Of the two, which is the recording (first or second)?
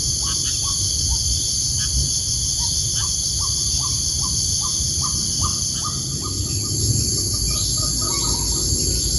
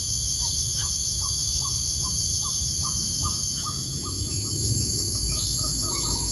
first